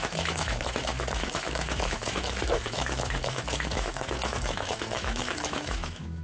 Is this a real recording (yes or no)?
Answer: no